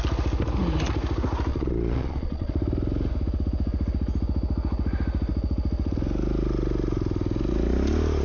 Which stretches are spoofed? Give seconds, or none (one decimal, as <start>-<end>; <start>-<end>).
1.5-2.5